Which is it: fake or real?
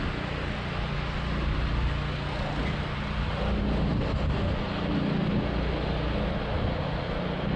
real